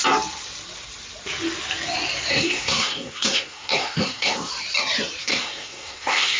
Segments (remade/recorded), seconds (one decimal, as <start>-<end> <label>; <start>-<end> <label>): 0.0-2.3 recorded; 2.3-4.5 remade; 4.5-5.2 recorded; 5.2-6.4 remade